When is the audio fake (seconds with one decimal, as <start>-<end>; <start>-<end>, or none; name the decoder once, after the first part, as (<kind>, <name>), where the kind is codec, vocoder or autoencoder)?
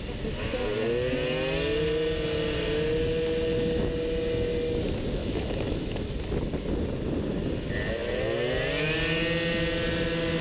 5.2-6.1 (autoencoder, DAC-VAE)